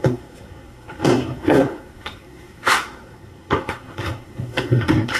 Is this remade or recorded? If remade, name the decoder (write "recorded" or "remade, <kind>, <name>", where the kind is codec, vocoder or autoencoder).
remade, codec, SNAC